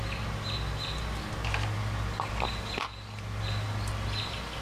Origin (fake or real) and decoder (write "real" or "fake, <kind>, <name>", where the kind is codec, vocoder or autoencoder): real